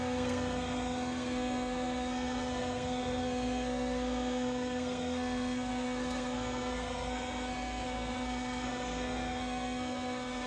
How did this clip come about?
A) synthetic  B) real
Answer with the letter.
A